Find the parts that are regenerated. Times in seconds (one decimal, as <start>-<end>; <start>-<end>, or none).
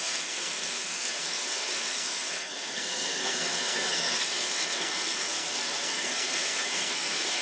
0.0-7.4